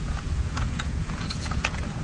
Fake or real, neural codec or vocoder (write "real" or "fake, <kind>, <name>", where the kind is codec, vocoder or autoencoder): fake, vocoder, Vocos